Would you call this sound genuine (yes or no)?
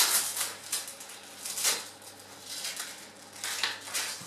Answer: yes